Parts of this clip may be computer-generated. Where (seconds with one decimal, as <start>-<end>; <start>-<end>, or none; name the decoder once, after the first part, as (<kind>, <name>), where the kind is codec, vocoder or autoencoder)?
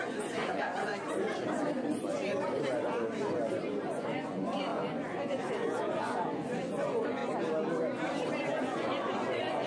0.0-0.9 (vocoder, Vocos); 3.9-7.2; 8.6-9.7